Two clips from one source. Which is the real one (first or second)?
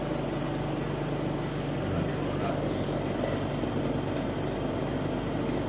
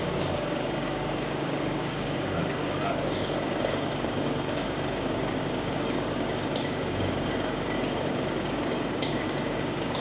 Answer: first